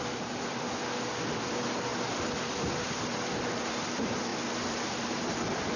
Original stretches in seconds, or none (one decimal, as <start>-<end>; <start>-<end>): 0.0-1.9; 3.7-4.3